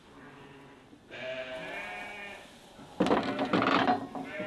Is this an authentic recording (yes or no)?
yes